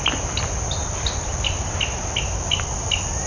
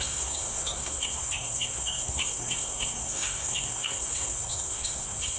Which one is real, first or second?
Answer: first